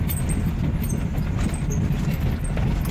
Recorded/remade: recorded